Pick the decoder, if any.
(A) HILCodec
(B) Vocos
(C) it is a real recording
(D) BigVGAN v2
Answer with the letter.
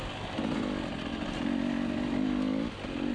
C